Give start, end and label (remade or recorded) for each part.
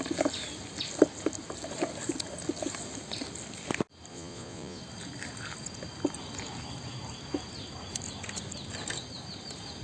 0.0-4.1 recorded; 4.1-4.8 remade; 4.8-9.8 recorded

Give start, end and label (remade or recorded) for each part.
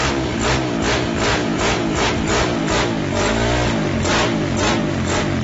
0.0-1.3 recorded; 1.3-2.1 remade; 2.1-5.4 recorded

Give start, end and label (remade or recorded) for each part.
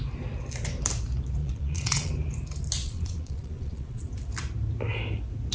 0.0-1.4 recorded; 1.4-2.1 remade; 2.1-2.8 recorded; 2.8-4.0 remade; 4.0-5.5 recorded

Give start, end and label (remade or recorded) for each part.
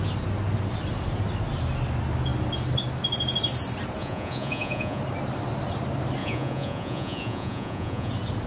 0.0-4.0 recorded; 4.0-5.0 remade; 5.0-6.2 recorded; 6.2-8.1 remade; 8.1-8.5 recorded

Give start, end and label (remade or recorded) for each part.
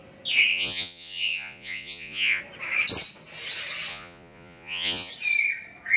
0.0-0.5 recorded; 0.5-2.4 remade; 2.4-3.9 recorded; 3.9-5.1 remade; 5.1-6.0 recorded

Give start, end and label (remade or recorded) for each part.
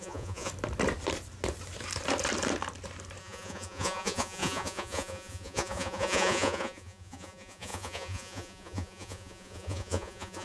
0.0-0.5 remade; 0.5-3.2 recorded; 3.2-10.4 remade